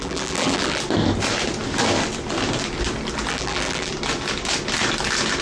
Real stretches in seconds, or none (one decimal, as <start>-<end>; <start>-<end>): 0.8-3.3; 3.9-5.4